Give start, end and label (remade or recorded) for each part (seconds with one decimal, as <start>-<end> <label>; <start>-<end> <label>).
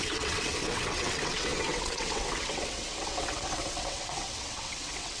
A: 0.0-5.2 remade